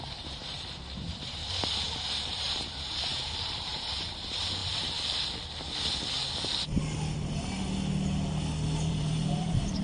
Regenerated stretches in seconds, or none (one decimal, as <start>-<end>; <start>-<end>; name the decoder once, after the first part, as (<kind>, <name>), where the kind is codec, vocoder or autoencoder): 0.0-1.4 (vocoder, BigVGAN v2); 2.3-4.6; 8.8-9.8

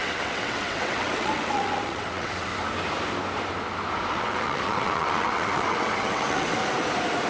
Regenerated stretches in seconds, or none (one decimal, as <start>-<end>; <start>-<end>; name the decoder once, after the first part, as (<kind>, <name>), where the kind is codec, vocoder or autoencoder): 0.0-2.5 (vocoder, WaveNeXt); 4.1-6.6

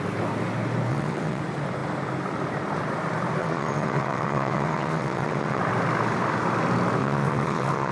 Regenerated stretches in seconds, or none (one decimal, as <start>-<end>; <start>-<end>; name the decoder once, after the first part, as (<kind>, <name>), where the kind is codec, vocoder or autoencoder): 0.9-1.4 (vocoder, WaveNeXt); 3.4-5.6; 7.0-7.9